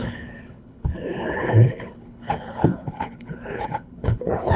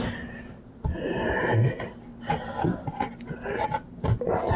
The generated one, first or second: first